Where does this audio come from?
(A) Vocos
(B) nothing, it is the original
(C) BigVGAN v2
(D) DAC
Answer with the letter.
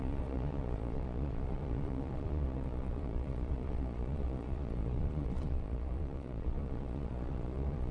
A